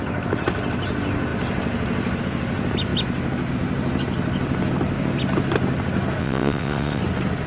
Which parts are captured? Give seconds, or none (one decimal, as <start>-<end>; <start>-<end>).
0.0-6.2; 7.0-7.5